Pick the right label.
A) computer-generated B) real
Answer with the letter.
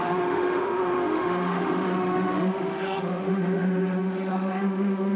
A